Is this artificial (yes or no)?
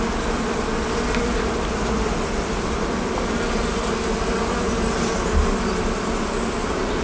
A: no